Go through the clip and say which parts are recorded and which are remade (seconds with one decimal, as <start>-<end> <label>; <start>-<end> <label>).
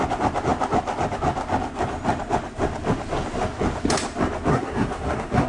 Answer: 0.0-4.5 recorded; 4.5-5.5 remade